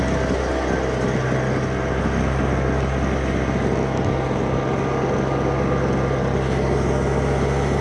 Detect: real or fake real